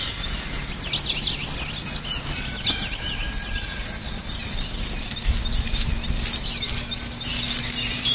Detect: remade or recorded recorded